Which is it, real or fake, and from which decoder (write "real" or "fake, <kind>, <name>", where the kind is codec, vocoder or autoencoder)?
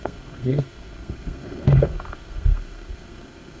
fake, codec, SNAC